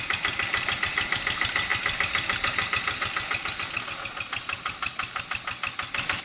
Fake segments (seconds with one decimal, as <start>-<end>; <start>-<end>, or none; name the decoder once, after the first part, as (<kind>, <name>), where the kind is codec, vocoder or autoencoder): none